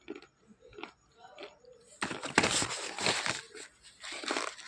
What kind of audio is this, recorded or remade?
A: recorded